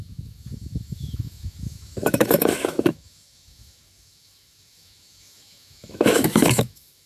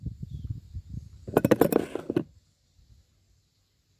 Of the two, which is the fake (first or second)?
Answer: first